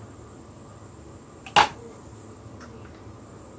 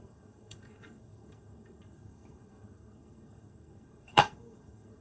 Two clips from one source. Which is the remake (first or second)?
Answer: second